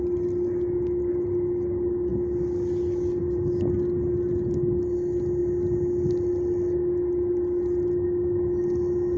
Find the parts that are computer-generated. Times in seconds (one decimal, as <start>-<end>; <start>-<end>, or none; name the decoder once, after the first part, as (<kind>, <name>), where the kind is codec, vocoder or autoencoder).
none